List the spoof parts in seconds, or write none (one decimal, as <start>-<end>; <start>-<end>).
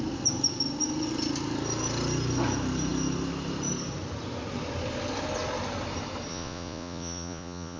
6.3-7.8